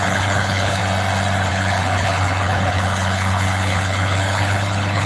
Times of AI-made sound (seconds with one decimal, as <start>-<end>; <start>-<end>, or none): 0.0-0.8; 1.5-5.1